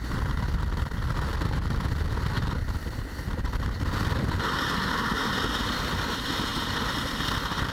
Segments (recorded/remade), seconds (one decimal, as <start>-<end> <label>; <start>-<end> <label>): 0.0-7.7 recorded